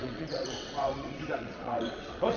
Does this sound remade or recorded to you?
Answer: remade